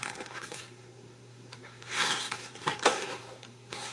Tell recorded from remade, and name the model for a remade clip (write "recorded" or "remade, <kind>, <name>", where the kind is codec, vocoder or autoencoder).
remade, codec, SNAC